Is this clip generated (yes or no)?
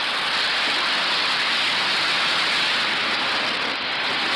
no